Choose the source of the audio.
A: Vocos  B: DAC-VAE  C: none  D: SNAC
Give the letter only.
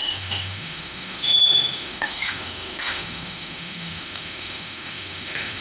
B